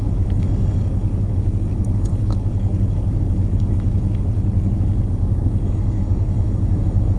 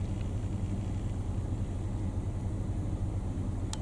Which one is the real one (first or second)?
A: second